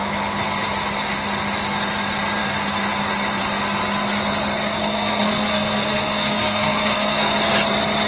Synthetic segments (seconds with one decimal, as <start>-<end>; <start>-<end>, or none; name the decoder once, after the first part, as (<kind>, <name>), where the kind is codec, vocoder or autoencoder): 4.8-7.3 (codec, SNAC)